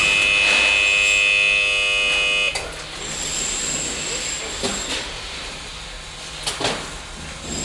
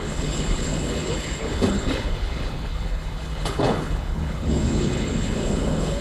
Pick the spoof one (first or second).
second